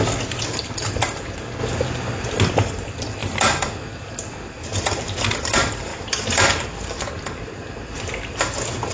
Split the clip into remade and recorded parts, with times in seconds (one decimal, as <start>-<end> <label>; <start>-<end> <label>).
0.0-5.9 remade; 5.9-6.6 recorded; 6.6-8.9 remade

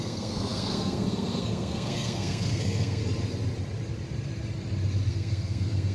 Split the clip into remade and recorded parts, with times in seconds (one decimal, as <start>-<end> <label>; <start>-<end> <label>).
0.0-3.0 remade; 3.0-5.1 recorded; 5.1-5.9 remade

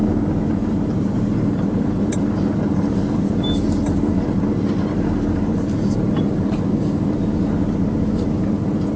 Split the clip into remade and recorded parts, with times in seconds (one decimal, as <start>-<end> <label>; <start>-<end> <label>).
0.0-9.0 recorded

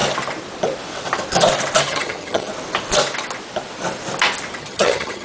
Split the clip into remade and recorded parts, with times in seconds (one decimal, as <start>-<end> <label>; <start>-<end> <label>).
0.0-1.8 recorded; 1.8-2.5 remade; 2.5-4.6 recorded; 4.6-5.2 remade

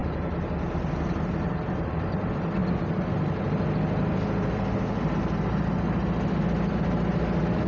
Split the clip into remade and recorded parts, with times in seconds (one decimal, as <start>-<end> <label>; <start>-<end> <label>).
0.0-7.7 recorded

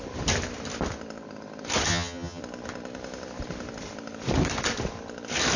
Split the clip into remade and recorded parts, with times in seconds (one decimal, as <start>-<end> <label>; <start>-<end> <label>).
0.0-1.9 recorded; 1.9-2.4 remade; 2.4-5.6 recorded